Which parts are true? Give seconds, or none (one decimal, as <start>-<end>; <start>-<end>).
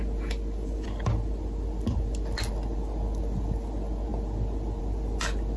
0.0-5.6